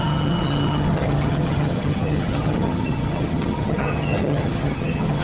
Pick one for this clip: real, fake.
fake